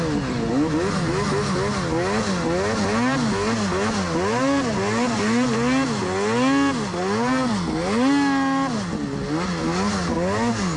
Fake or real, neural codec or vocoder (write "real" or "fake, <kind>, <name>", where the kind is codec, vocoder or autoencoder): real